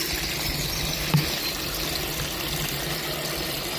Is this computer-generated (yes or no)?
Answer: no